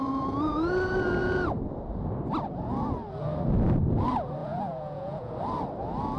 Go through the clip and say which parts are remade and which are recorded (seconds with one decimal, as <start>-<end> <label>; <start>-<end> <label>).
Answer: 0.0-4.4 recorded; 4.4-5.3 remade; 5.3-6.2 recorded